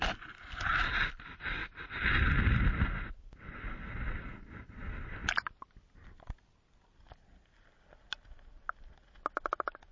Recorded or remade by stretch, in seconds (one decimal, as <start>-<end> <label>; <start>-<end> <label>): 0.0-9.9 recorded